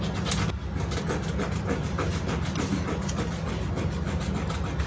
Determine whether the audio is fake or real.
real